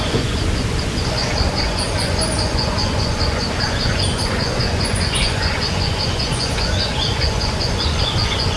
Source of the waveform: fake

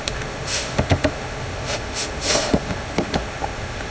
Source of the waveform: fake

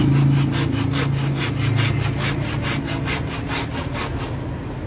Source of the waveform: real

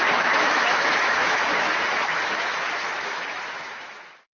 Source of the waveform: fake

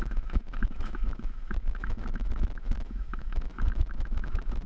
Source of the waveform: fake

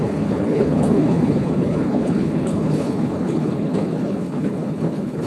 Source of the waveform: fake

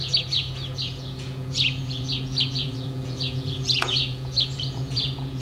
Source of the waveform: fake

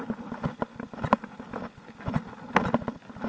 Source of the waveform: real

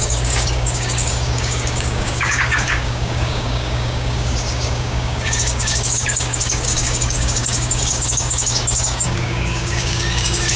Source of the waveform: fake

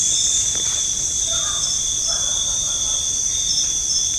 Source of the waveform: real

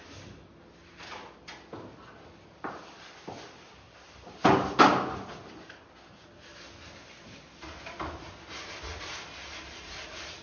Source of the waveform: real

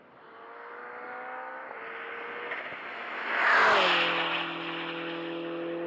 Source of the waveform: real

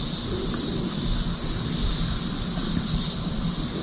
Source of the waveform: real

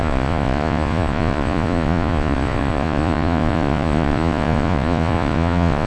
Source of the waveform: fake